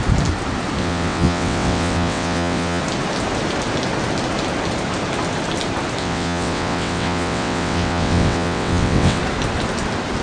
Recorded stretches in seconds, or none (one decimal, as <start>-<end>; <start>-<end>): 0.0-0.8; 2.8-6.0; 9.2-10.2